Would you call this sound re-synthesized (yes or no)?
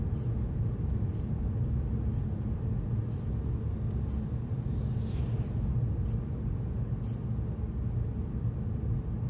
no